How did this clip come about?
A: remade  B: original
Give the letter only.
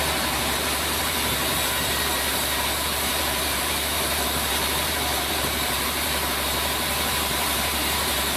A